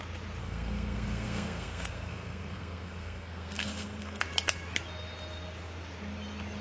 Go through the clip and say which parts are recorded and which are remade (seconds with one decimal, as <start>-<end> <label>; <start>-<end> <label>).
0.0-0.4 recorded; 0.4-4.2 remade; 4.2-6.6 recorded